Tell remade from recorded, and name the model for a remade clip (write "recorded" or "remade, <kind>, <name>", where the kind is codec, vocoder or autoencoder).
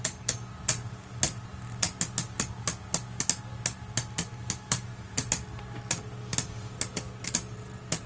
recorded